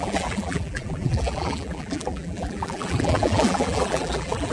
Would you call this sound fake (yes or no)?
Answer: yes